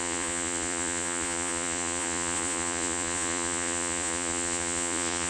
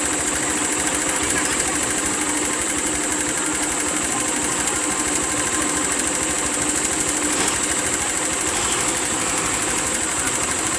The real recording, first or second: second